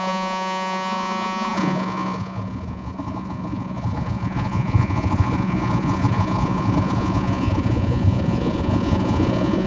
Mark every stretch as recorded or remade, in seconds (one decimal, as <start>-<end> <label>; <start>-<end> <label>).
0.0-9.7 remade